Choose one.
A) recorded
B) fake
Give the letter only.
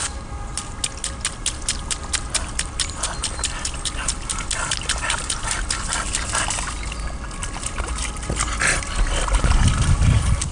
A